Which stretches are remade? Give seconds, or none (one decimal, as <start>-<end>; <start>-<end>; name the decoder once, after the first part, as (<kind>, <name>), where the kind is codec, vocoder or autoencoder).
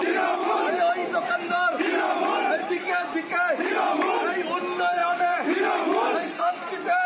5.0-6.4 (vocoder, BigVGAN v2)